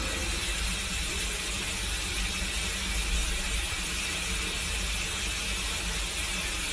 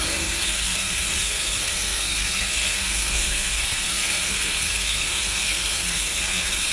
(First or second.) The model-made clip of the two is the second